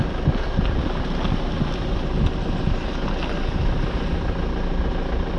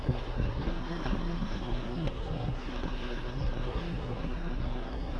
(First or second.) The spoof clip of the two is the second